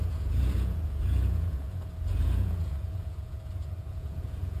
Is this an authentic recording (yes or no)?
no